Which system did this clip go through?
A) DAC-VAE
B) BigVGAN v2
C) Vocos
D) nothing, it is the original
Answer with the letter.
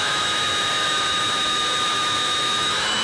A